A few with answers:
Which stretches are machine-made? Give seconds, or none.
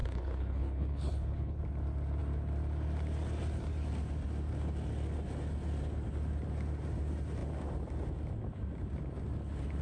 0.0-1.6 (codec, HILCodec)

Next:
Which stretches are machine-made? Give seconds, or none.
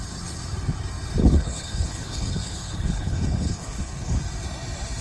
1.2-4.2 (codec, HILCodec)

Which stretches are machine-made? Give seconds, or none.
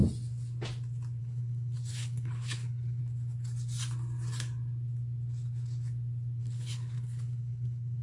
1.2-3.0 (codec, HILCodec); 6.4-8.0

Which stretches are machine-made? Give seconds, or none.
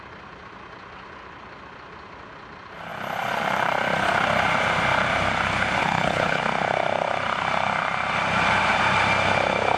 5.8-6.4 (codec, HILCodec)